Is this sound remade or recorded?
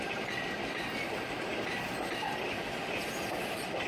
recorded